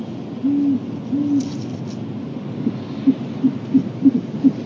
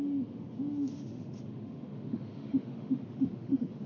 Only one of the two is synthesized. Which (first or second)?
second